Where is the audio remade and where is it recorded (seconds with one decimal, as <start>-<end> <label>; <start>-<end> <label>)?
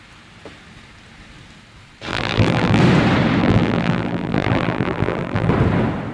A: 0.0-2.1 recorded; 2.1-2.8 remade; 2.8-3.4 recorded; 3.4-5.5 remade; 5.5-6.1 recorded